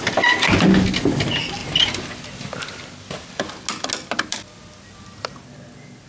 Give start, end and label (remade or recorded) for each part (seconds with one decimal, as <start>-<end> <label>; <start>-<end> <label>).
0.0-6.1 recorded